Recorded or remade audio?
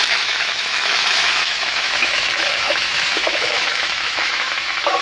remade